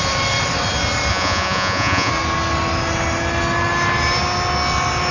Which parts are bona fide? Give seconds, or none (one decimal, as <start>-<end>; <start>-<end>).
0.0-1.1; 2.1-5.1